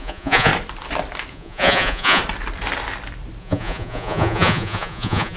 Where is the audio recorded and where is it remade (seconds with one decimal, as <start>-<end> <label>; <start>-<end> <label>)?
0.0-0.5 remade; 0.5-1.3 recorded; 1.3-2.2 remade; 2.2-3.4 recorded; 3.4-5.4 remade